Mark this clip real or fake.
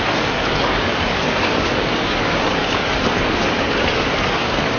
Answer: fake